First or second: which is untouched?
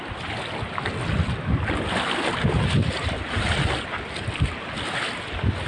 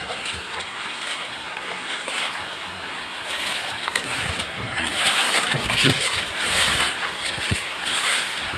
first